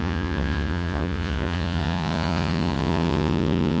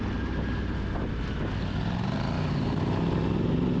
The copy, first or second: first